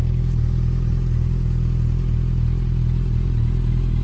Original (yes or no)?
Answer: yes